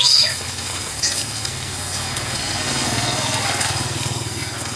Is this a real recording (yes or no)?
no